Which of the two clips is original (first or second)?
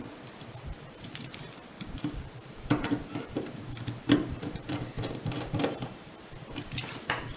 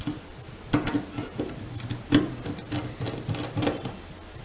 second